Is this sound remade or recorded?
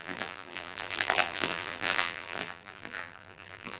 remade